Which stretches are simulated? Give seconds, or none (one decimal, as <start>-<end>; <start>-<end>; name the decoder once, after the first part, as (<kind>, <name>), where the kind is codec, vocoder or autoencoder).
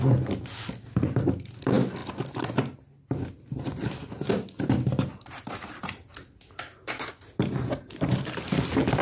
none